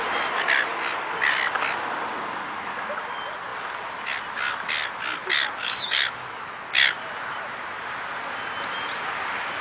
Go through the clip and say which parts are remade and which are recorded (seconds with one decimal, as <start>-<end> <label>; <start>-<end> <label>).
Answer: 0.0-5.6 recorded; 5.6-6.6 remade; 6.6-9.6 recorded